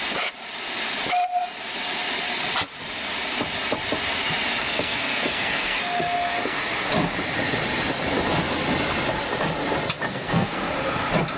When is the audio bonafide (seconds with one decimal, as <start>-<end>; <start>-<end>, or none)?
0.0-4.6; 6.6-10.1; 10.7-11.4